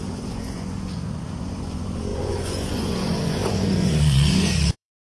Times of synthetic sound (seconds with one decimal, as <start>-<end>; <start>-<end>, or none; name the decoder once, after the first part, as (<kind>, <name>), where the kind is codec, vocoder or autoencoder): 0.0-5.0 (vocoder, Vocos)